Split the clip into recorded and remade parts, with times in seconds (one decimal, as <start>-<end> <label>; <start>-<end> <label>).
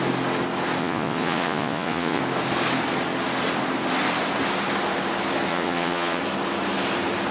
0.0-0.8 recorded; 0.8-2.2 remade; 2.2-5.5 recorded; 5.5-6.2 remade; 6.2-7.3 recorded